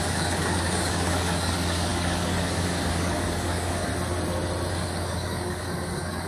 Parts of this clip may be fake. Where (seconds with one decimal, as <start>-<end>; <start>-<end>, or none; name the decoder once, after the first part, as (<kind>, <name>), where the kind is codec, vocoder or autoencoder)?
0.0-3.9 (codec, DAC); 4.7-6.3